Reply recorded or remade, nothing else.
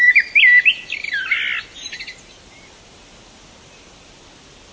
recorded